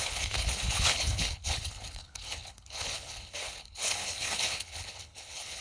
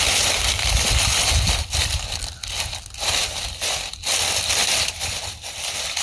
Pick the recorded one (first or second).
second